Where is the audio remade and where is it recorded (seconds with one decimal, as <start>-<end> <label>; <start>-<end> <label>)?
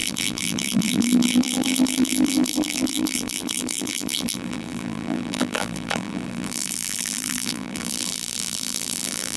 0.0-9.4 remade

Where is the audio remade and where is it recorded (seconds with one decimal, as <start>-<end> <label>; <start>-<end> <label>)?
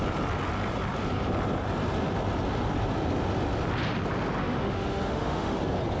0.0-4.4 recorded; 4.4-5.6 remade; 5.6-6.0 recorded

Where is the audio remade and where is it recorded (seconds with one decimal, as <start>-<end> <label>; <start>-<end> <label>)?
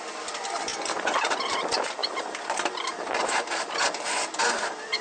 0.0-5.0 recorded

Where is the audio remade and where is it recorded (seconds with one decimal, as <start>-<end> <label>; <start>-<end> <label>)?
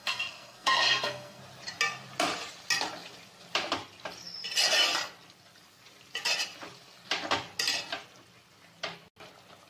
0.0-1.4 remade; 1.4-9.7 recorded